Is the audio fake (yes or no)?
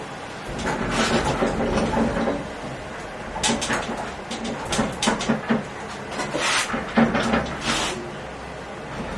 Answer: no